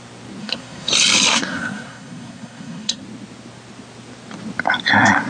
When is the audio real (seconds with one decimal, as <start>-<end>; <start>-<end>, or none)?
0.0-0.4; 0.9-1.3; 3.0-5.3